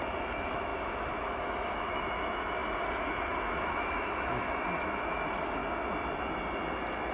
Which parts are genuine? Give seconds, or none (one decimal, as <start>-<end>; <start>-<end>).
5.6-7.1